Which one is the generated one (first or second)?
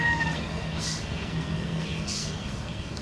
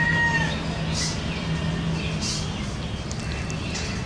first